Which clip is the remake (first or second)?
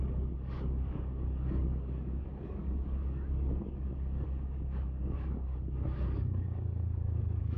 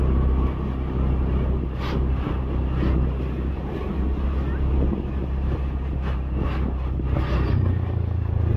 first